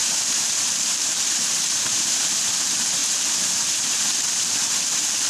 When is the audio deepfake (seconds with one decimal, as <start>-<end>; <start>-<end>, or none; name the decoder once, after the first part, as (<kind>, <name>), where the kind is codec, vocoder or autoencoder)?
0.0-5.3 (vocoder, BigVGAN v2)